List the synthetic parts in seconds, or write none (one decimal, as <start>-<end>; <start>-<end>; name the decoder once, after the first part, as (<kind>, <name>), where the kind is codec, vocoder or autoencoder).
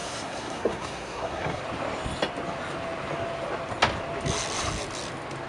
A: 0.0-1.6 (codec, SNAC)